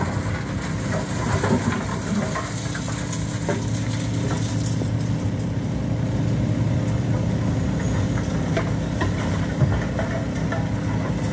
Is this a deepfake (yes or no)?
no